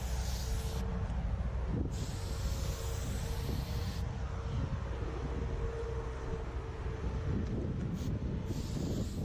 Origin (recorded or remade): recorded